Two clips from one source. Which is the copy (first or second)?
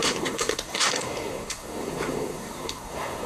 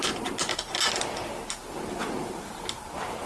first